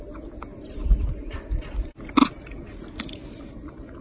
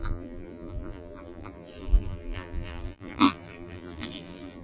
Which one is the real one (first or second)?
first